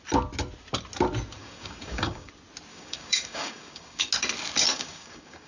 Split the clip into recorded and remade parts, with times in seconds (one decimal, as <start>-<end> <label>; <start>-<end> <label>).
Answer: 0.0-1.4 recorded; 1.4-2.3 remade; 2.3-2.7 recorded; 2.7-4.1 remade; 4.1-4.7 recorded; 4.7-5.5 remade